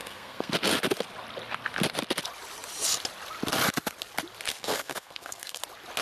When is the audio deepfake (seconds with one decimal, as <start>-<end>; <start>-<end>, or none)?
0.0-0.5; 4.5-5.6